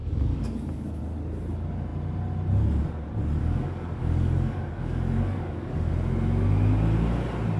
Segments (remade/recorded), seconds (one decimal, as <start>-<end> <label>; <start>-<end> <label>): 0.0-1.0 remade; 1.0-3.4 recorded; 3.4-5.9 remade; 5.9-7.6 recorded